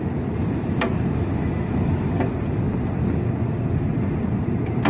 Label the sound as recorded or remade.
recorded